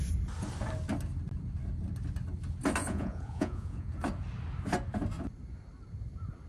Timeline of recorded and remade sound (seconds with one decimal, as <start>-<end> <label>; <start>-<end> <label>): 0.0-2.8 recorded; 2.8-3.9 remade; 3.9-6.5 recorded